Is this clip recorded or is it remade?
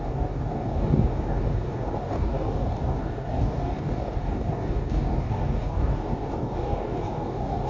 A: remade